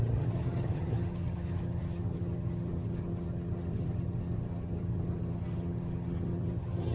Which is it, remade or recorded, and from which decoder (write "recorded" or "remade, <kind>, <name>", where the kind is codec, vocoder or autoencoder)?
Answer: remade, vocoder, HiFi-GAN